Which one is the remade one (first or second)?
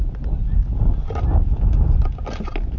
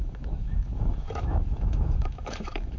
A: second